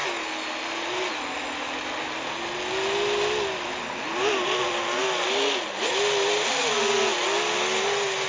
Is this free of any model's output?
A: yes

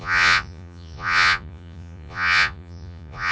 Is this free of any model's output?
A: no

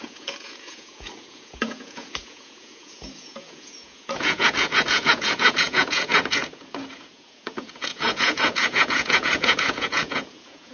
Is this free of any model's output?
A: no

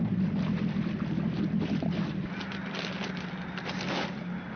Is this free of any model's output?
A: yes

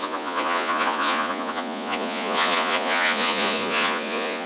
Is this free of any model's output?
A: no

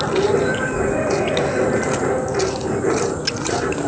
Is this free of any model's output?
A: yes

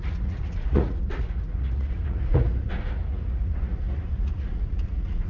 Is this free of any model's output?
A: no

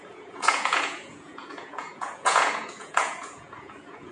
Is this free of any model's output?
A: no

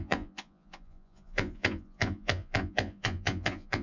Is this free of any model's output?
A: no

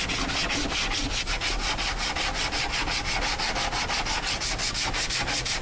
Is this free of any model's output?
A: yes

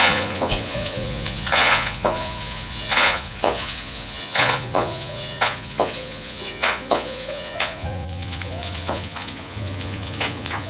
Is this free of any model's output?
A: no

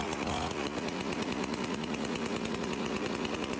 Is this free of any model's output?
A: no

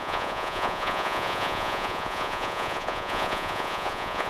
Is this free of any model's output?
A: no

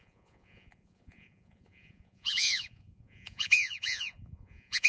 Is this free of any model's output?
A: no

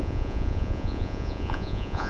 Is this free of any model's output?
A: no